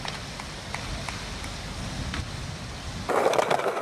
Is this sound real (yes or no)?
yes